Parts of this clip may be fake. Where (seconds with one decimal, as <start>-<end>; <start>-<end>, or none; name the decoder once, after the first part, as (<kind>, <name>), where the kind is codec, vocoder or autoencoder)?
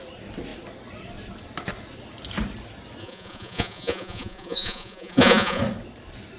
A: 3.0-5.6 (vocoder, Vocos)